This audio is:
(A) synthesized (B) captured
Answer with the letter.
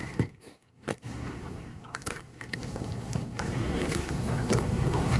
A